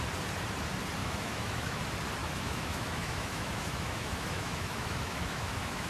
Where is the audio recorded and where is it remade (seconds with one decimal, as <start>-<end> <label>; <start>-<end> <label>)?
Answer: 0.0-1.0 recorded; 1.0-1.8 remade; 1.8-2.2 recorded; 2.2-5.9 remade